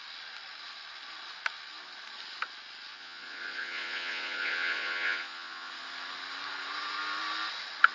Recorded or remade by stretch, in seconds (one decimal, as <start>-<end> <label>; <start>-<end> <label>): 0.0-2.9 recorded; 2.9-5.7 remade; 5.7-7.9 recorded